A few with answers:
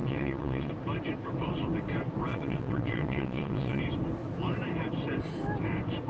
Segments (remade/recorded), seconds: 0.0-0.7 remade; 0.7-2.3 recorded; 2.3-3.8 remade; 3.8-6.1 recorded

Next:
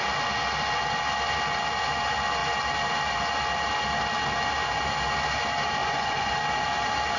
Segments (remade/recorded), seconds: 0.0-5.8 recorded; 5.8-6.3 remade; 6.3-7.2 recorded